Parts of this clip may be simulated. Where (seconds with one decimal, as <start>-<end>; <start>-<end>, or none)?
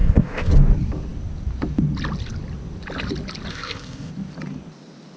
0.0-0.5; 3.5-4.1